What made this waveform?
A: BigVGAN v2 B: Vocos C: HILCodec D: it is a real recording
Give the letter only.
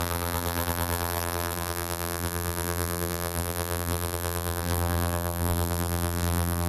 A